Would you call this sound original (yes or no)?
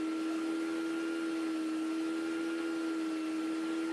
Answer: yes